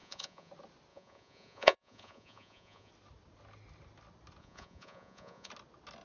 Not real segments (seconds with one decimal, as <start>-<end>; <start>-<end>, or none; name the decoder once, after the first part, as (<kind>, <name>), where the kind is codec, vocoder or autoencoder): 0.0-0.5 (vocoder, Vocos); 0.9-2.9; 4.4-5.5